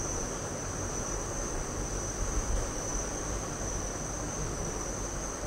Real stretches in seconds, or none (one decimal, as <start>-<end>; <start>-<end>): 0.0-5.5